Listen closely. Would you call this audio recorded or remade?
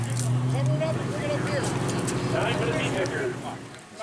recorded